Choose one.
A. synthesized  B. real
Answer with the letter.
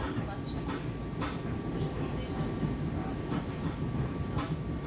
B